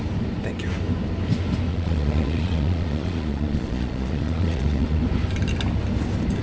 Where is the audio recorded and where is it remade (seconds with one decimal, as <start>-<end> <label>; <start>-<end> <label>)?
0.0-1.7 recorded; 1.7-5.0 remade; 5.0-6.4 recorded